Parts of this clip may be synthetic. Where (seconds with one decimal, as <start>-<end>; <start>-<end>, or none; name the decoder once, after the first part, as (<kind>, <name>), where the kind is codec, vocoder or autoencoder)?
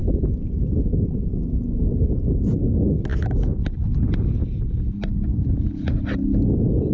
none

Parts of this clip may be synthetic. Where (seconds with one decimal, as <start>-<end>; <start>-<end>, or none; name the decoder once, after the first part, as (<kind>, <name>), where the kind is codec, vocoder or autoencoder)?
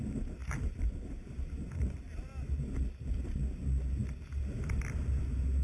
0.4-2.6 (vocoder, BigVGAN v2)